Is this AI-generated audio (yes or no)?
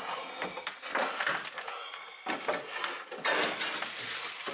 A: no